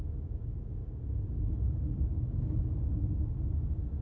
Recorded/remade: remade